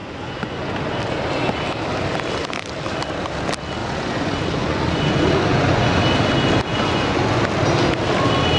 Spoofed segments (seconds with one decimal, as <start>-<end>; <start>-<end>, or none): 0.0-0.8; 3.8-6.0; 6.7-7.4